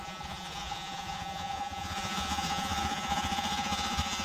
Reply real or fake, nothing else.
fake